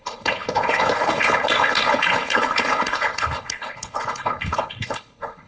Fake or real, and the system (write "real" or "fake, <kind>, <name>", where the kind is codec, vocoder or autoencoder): fake, codec, HILCodec